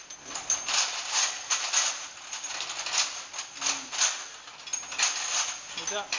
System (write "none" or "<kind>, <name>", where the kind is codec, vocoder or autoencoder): none